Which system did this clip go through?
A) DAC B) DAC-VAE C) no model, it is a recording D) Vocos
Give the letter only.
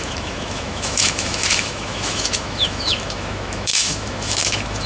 B